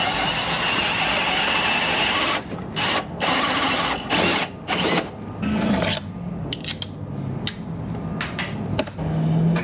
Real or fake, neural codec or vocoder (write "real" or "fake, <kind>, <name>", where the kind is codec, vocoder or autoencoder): real